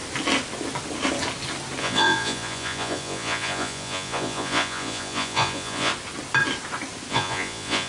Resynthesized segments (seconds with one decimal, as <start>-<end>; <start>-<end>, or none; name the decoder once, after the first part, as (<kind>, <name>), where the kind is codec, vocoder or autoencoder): 1.8-5.9 (vocoder, Vocos); 7.1-7.9